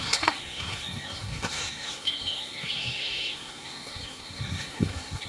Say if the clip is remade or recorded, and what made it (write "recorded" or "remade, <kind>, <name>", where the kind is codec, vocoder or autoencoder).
remade, codec, SNAC